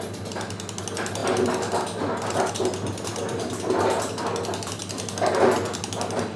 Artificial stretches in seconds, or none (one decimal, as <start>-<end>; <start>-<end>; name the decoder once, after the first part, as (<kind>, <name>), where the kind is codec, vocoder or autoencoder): none